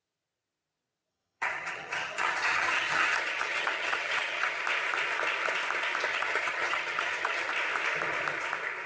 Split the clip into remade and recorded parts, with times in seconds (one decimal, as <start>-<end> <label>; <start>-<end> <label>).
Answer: 0.0-1.1 recorded; 1.1-4.6 remade; 4.6-6.1 recorded; 6.1-7.5 remade; 7.5-8.9 recorded